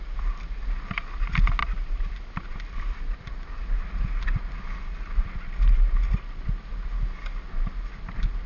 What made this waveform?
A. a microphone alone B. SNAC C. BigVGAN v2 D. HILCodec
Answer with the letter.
A